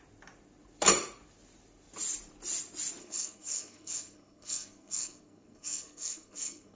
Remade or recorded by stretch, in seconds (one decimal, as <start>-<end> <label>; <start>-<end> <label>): 0.0-3.0 recorded; 3.0-6.8 remade